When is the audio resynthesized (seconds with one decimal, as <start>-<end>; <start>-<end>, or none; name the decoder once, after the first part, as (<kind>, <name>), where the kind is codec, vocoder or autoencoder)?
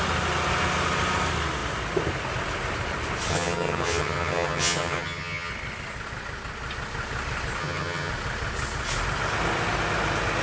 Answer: 3.3-5.5 (vocoder, HiFi-GAN); 7.6-8.1